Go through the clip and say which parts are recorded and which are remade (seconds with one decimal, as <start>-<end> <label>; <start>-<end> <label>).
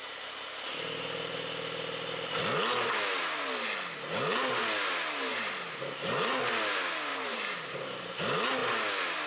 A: 0.0-5.3 recorded; 5.3-6.3 remade; 6.3-7.1 recorded; 7.1-8.2 remade; 8.2-9.3 recorded